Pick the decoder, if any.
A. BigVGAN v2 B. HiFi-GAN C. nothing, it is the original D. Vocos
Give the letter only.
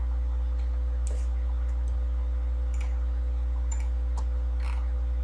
C